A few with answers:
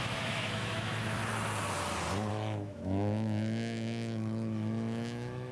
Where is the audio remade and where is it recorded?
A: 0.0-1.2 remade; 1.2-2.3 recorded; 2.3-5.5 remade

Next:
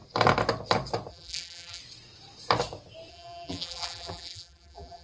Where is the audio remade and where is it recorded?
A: 0.0-1.1 recorded; 1.1-1.8 remade; 1.8-3.1 recorded; 3.1-5.0 remade

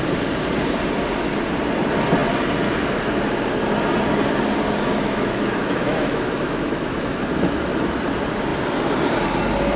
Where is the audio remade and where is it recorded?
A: 0.0-4.9 recorded; 4.9-7.2 remade; 7.2-9.8 recorded

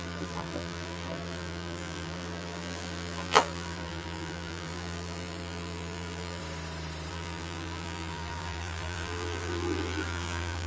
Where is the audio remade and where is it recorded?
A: 0.0-6.4 remade; 6.4-7.1 recorded; 7.1-10.7 remade

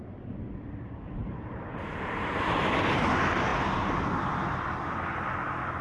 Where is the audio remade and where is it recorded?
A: 0.0-1.2 recorded; 1.2-2.6 remade; 2.6-5.8 recorded

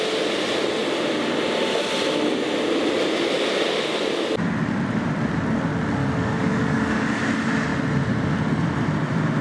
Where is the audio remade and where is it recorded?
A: 0.0-6.0 recorded; 6.0-7.2 remade; 7.2-9.4 recorded

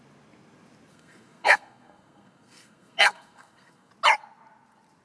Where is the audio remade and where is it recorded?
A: 0.0-0.9 recorded; 0.9-3.9 remade; 3.9-5.0 recorded

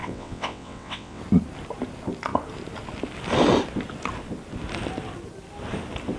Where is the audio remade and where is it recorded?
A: 0.0-1.2 remade; 1.2-6.2 recorded